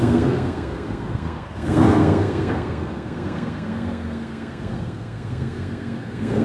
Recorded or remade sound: remade